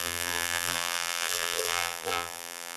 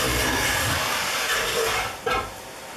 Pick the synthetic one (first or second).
first